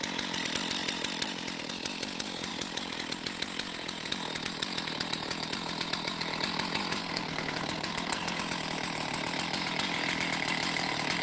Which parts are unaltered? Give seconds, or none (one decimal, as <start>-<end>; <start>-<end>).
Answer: 0.0-7.0; 8.4-11.2